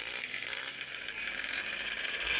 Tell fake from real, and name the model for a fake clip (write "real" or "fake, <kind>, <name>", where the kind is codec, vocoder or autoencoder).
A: fake, vocoder, BigVGAN v2